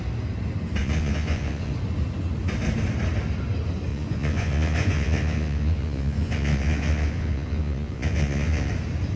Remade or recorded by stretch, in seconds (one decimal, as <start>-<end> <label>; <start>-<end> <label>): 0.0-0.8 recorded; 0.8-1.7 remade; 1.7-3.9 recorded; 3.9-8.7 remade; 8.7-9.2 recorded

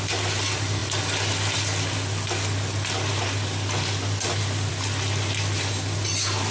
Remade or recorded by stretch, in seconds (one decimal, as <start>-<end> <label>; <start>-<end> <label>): 0.0-6.5 recorded

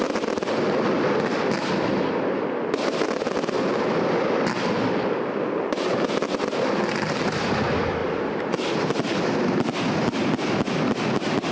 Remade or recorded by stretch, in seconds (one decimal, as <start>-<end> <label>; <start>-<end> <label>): 0.0-11.5 recorded

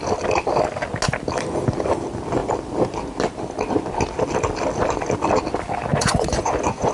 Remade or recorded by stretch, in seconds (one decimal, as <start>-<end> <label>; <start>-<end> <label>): 0.0-5.9 recorded; 5.9-6.9 remade

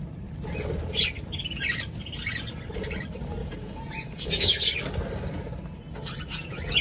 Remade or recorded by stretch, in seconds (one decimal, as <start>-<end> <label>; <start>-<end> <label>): 0.0-3.4 recorded; 3.4-4.5 remade; 4.5-6.8 recorded

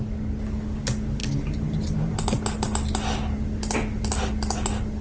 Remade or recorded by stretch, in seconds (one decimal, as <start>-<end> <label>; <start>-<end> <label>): 0.0-5.0 recorded

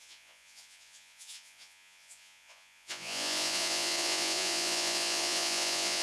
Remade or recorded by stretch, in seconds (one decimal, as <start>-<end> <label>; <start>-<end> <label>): 0.0-6.0 remade

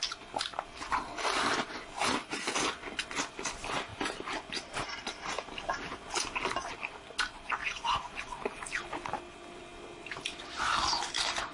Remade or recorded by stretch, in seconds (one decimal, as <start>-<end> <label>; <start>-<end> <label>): 0.0-7.6 recorded; 7.6-8.2 remade; 8.2-11.5 recorded